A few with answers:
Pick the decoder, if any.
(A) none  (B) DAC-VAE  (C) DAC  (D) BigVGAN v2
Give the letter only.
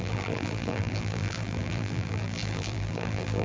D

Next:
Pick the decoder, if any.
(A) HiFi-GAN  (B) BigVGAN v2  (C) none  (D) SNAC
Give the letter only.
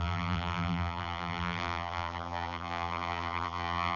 B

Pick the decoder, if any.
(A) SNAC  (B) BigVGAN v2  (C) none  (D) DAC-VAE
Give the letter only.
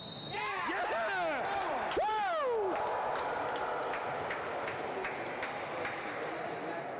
C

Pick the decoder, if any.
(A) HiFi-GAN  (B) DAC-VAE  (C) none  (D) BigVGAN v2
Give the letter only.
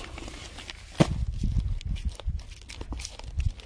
C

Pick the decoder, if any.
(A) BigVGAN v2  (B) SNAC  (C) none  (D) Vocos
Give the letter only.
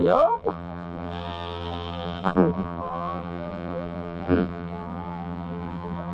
A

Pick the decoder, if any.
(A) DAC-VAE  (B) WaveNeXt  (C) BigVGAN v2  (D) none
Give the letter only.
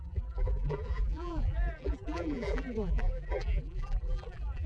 C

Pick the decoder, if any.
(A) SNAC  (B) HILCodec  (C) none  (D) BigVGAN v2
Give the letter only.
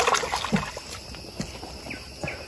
C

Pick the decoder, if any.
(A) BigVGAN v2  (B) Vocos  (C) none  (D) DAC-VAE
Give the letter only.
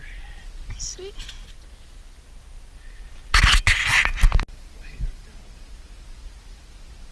C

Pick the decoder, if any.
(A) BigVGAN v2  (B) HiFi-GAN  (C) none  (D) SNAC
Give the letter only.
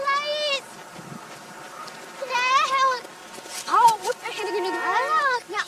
C